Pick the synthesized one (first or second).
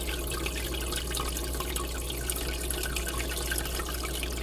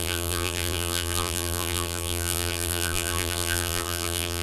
second